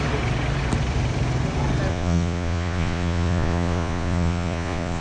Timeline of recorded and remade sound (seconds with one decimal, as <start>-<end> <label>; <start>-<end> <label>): 0.0-1.9 recorded; 1.9-5.0 remade